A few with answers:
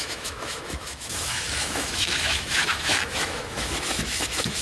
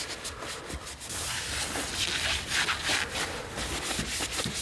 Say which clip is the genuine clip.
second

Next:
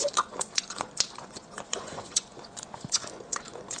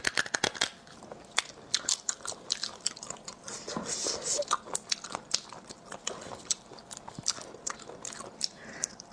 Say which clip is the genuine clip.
second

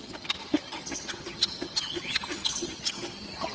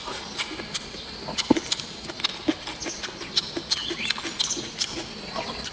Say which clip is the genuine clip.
second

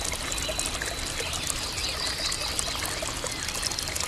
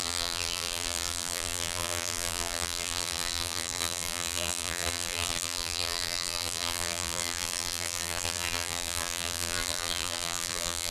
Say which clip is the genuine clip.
first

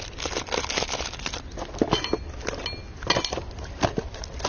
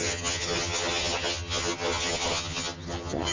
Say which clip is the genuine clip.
first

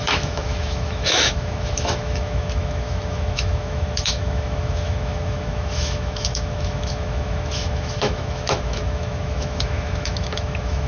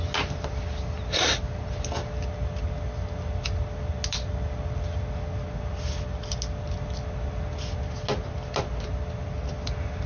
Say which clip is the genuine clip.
second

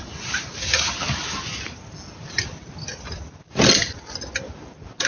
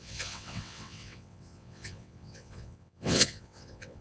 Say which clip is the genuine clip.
first